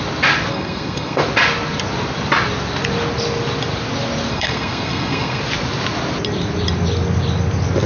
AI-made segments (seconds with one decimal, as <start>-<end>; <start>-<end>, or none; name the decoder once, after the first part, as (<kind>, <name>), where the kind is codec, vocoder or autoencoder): 0.5-1.2 (codec, SNAC); 4.3-5.4